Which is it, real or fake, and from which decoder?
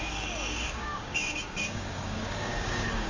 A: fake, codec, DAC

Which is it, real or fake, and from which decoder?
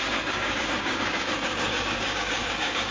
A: fake, codec, DAC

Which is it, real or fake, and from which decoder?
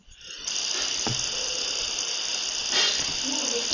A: real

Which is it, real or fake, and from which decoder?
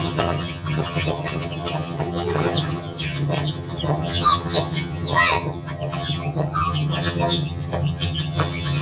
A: fake, vocoder, HiFi-GAN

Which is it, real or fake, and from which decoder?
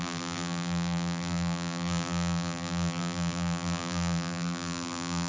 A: fake, vocoder, BigVGAN v2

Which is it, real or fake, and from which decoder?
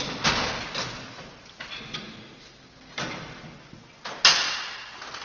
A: real